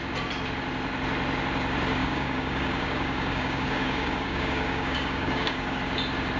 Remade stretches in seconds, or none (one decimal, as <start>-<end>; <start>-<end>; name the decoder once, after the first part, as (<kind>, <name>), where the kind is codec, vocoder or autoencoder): 2.0-5.8 (codec, DAC)

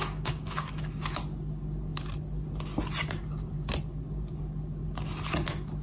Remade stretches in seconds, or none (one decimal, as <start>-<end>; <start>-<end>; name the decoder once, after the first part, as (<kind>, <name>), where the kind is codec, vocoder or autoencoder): 0.0-1.2 (codec, DAC)

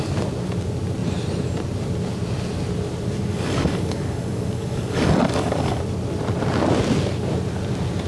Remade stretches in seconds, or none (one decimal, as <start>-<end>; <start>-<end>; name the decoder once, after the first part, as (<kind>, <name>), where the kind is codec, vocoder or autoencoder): 3.3-5.8 (codec, DAC)

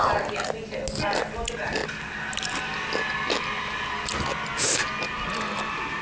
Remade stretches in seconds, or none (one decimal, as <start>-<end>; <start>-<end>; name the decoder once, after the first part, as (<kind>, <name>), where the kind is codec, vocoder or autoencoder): none

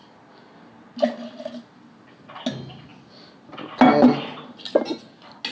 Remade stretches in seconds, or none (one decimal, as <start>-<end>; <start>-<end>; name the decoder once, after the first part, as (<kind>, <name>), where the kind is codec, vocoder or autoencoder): none

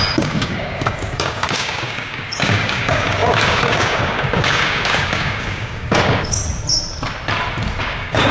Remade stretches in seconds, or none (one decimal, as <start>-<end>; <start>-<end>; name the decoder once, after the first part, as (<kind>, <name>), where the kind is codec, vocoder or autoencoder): 0.0-6.4 (codec, DAC); 7.8-8.3

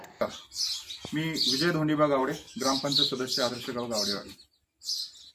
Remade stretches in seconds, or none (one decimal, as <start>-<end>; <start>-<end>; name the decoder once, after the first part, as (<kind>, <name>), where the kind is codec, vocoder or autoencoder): 2.2-3.5 (codec, DAC)